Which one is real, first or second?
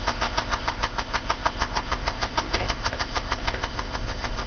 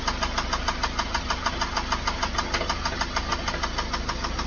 second